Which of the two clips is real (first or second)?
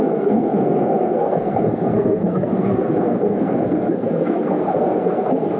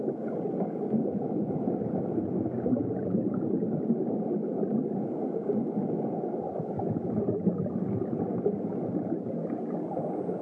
second